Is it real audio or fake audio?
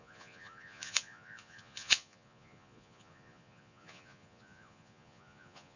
fake